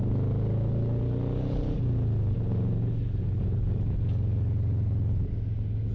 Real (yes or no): yes